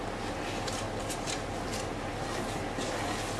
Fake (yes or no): no